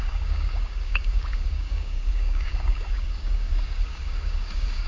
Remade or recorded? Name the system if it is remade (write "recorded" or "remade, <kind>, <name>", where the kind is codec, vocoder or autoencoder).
remade, codec, DAC